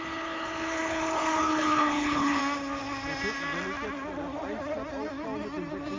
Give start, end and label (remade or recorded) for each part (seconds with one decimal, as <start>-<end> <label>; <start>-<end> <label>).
0.0-2.4 remade; 2.4-6.0 recorded